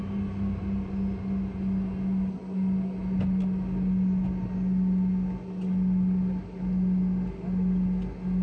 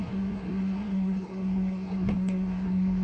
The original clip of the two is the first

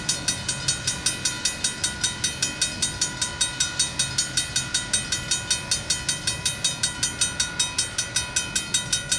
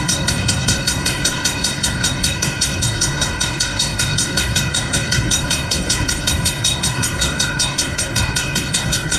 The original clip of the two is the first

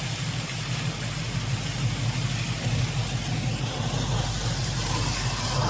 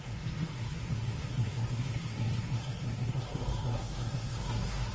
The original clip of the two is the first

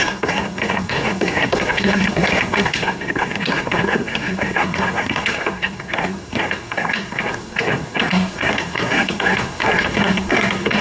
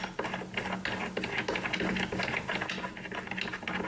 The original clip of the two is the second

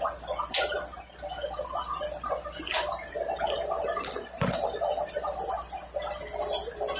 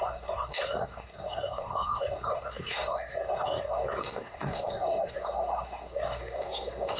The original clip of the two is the first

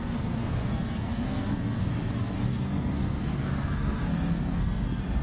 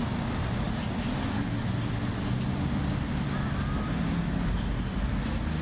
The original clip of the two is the second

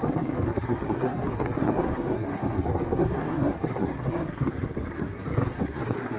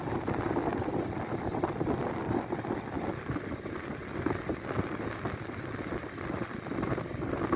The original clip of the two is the second